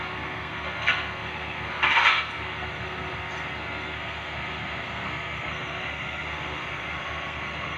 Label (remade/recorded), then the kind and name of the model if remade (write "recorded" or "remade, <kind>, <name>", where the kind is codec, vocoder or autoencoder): remade, codec, SNAC